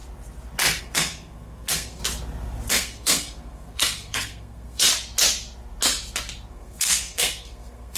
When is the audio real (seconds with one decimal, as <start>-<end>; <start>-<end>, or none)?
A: 0.0-0.8; 2.0-2.7; 4.9-6.5